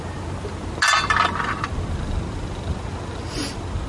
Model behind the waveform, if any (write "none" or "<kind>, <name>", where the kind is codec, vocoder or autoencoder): none